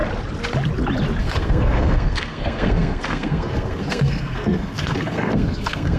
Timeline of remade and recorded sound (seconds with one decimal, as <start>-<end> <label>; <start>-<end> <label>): 0.0-1.2 recorded; 1.2-6.0 remade